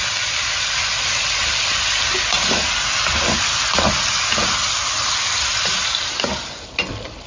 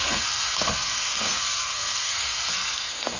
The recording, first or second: first